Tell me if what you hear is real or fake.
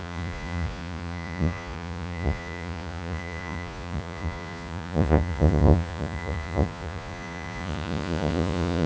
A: fake